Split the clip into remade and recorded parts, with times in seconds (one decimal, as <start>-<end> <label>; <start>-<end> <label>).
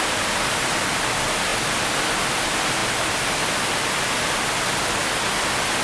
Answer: 0.0-5.8 recorded